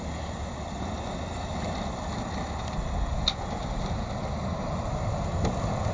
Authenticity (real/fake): real